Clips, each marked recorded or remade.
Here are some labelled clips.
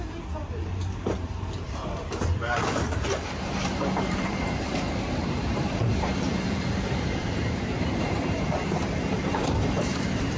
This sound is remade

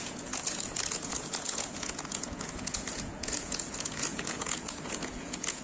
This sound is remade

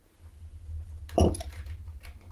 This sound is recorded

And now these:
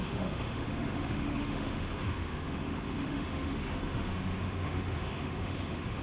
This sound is remade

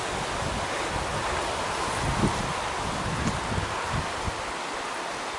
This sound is recorded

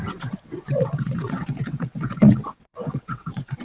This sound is remade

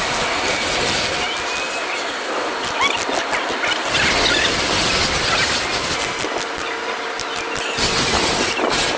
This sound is recorded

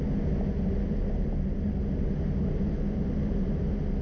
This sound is recorded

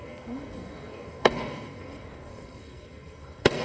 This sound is remade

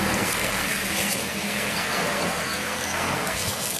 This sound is remade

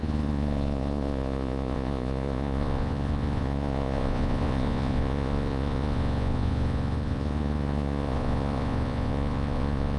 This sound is remade